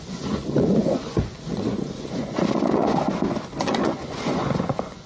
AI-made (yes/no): yes